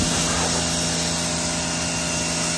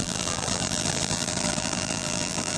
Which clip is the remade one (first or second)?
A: second